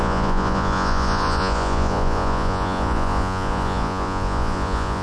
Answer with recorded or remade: remade